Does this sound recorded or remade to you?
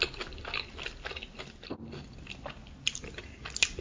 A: recorded